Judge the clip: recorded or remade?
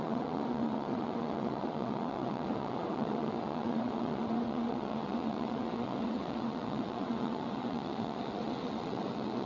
remade